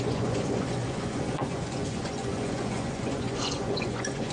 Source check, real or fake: fake